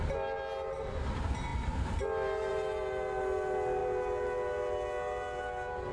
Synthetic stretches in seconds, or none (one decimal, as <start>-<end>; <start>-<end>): none

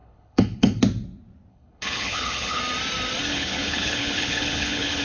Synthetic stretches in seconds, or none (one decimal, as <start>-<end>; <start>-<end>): 0.0-0.8; 1.5-2.6; 3.3-5.0

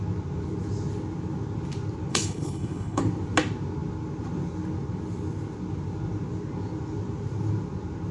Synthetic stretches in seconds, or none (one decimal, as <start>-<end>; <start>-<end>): 2.1-3.0

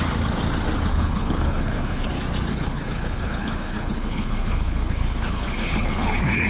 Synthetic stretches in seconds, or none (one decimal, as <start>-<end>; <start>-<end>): 0.9-2.1; 2.5-6.5

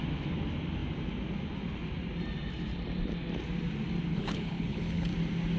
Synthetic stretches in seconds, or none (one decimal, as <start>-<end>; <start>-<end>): 4.1-5.1

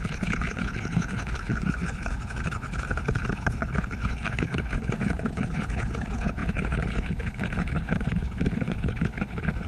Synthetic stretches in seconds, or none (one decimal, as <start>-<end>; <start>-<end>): 0.0-9.7

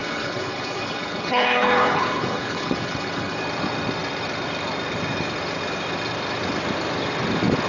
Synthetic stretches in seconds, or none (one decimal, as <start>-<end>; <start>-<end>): 0.0-3.4

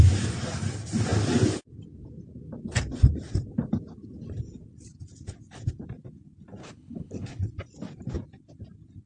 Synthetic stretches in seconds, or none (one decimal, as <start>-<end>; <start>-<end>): 6.6-7.4